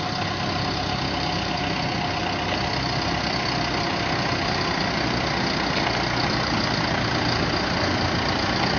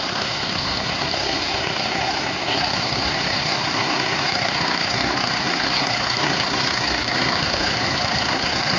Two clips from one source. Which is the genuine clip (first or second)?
first